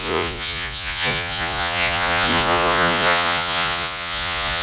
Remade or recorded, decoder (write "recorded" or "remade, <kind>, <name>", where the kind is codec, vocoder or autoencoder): remade, vocoder, Vocos